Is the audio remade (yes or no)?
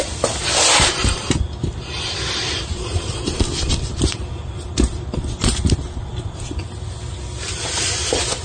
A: no